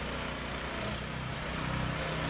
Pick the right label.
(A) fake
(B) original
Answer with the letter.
B